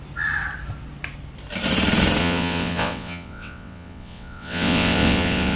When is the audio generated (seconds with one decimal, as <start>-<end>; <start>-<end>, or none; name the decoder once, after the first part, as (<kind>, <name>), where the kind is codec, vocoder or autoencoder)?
2.2-5.6 (vocoder, WaveNeXt)